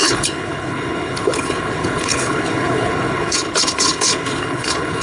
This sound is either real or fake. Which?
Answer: fake